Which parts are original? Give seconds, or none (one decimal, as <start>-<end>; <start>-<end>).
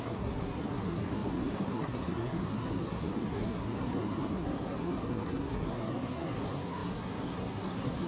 none